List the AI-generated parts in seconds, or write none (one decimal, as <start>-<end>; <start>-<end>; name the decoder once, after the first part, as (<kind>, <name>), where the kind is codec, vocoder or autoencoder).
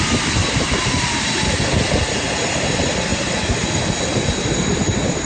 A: 0.4-1.6 (vocoder, BigVGAN v2); 3.1-5.2